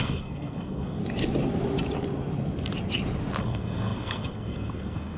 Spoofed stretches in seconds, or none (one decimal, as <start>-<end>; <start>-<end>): 0.0-1.0; 3.4-5.2